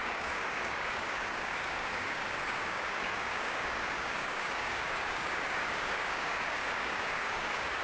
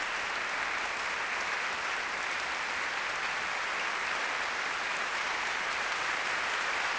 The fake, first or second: first